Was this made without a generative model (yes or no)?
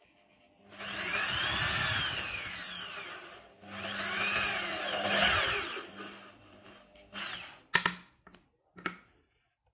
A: yes